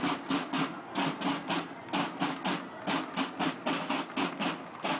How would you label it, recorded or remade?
recorded